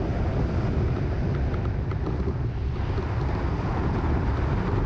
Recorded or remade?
recorded